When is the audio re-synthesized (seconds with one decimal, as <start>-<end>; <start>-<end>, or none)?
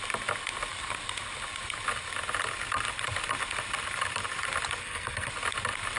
4.8-5.3